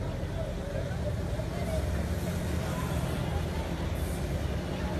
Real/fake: real